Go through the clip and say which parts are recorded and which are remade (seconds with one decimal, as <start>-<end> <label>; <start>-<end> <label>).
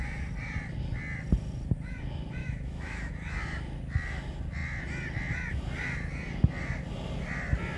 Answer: 0.0-2.4 recorded; 2.4-3.1 remade; 3.1-7.8 recorded